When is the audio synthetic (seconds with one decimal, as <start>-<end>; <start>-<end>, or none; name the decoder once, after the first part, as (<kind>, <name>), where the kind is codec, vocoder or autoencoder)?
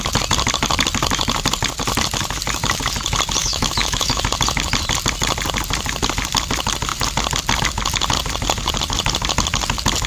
3.4-4.2 (autoencoder, DAC-VAE)